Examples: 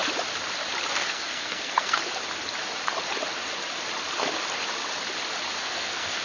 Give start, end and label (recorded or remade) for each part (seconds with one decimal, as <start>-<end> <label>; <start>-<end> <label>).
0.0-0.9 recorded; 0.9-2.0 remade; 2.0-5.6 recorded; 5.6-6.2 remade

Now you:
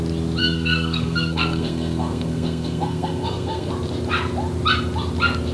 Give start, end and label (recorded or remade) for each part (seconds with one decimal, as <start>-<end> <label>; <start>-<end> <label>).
0.0-0.4 recorded; 0.4-3.7 remade; 3.7-5.5 recorded

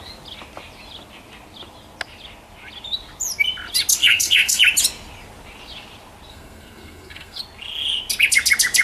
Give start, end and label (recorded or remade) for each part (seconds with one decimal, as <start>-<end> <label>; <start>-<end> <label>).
0.0-4.0 recorded; 4.0-4.6 remade; 4.6-6.3 recorded; 6.3-7.4 remade; 7.4-8.8 recorded